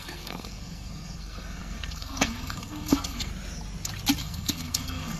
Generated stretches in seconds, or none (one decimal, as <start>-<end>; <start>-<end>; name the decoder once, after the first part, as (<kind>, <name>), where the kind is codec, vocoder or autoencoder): 0.0-3.3 (codec, SNAC); 4.2-5.2